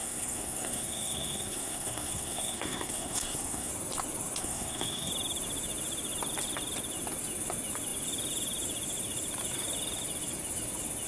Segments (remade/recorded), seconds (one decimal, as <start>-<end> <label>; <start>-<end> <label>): 0.0-3.7 remade; 3.7-4.4 recorded; 4.4-5.1 remade; 5.1-11.1 recorded